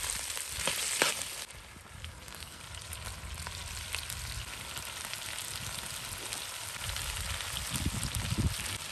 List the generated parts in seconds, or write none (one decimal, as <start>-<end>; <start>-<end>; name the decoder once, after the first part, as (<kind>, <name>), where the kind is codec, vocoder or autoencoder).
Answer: 2.0-2.6 (codec, SNAC)